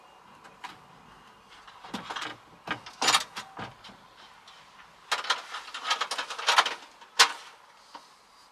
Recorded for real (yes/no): yes